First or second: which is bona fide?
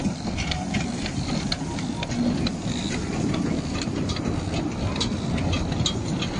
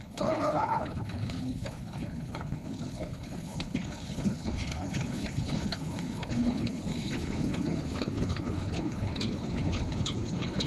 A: first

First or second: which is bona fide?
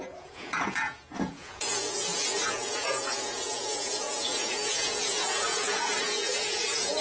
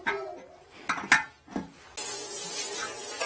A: second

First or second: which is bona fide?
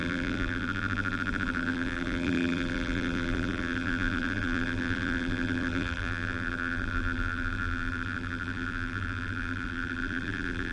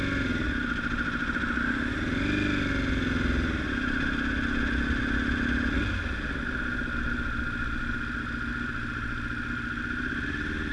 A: second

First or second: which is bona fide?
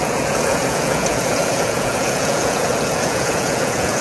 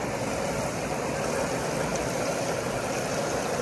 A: second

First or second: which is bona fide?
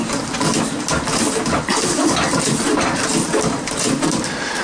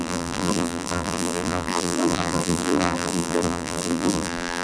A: first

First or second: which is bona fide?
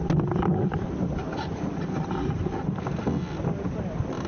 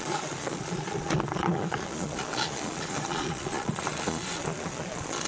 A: first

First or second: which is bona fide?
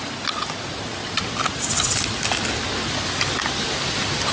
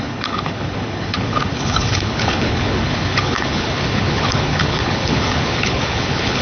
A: first